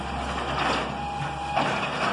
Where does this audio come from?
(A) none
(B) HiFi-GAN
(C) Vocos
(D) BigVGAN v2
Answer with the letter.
A